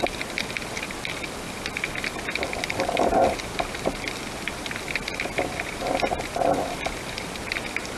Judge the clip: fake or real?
real